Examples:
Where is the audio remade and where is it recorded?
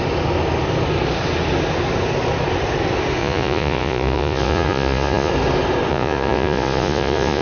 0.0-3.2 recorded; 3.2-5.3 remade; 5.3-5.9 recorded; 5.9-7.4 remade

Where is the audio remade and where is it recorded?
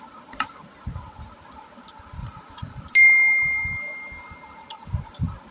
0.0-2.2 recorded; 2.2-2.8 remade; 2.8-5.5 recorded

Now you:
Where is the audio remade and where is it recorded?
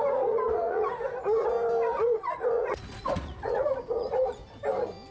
0.0-1.4 remade; 1.4-2.0 recorded; 2.0-4.4 remade; 4.4-5.1 recorded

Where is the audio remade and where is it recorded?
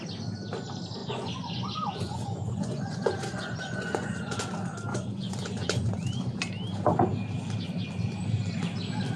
0.0-1.0 recorded; 1.0-4.4 remade; 4.4-4.9 recorded; 4.9-6.4 remade; 6.4-9.2 recorded